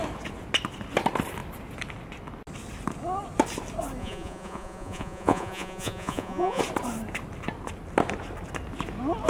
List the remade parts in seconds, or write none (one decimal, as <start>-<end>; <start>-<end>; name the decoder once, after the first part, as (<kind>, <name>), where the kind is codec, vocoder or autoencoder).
4.0-6.6 (vocoder, Vocos)